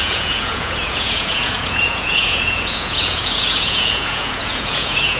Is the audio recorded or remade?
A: remade